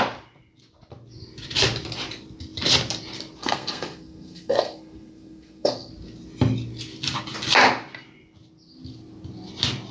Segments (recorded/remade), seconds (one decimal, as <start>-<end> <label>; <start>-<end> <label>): 0.0-3.4 recorded; 3.4-5.9 remade; 5.9-9.9 recorded